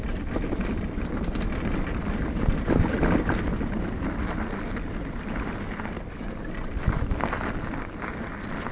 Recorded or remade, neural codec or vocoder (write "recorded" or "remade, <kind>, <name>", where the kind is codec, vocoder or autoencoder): recorded